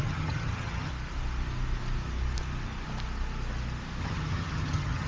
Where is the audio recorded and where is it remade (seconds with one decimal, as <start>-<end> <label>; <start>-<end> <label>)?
0.0-0.9 remade; 0.9-4.0 recorded; 4.0-5.1 remade